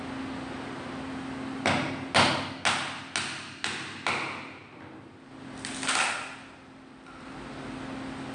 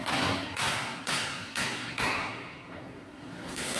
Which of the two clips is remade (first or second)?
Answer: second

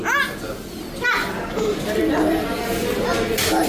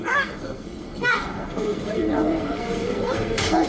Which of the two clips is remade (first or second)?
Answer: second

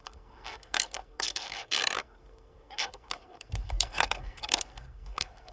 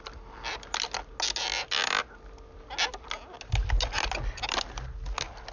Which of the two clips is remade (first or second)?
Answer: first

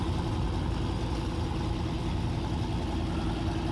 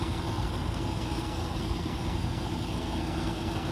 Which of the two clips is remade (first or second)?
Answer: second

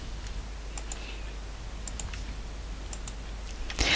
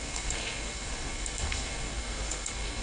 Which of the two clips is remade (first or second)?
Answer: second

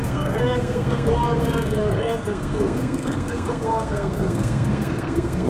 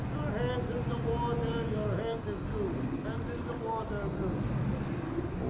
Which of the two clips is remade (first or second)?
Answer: first